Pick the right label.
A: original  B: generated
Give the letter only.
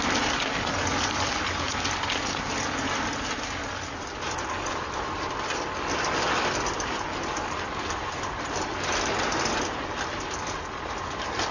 A